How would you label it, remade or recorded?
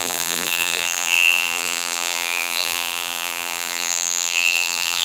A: remade